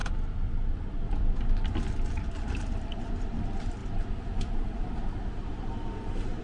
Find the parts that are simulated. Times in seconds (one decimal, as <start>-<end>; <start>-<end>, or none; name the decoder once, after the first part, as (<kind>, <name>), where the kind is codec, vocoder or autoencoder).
2.1-6.4 (vocoder, BigVGAN v2)